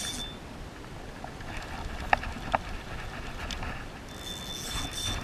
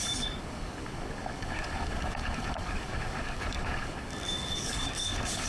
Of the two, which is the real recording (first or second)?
first